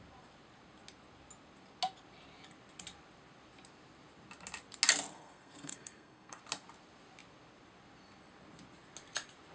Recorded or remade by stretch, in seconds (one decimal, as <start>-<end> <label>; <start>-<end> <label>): 0.0-5.1 recorded; 5.1-6.4 remade; 6.4-9.5 recorded